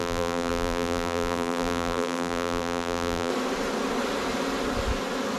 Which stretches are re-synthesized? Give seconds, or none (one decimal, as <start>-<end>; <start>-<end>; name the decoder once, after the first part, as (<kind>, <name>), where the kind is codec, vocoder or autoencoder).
0.0-3.3 (vocoder, BigVGAN v2)